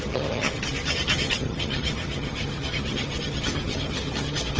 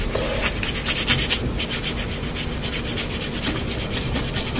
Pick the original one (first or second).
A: second